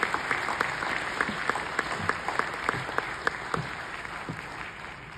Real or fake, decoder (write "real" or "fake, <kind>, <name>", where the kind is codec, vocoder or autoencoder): real